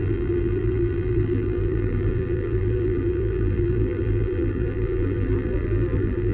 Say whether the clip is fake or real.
fake